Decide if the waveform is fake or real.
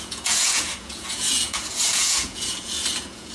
fake